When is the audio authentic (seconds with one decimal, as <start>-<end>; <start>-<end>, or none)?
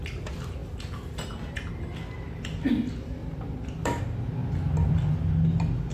0.0-3.2; 4.0-5.9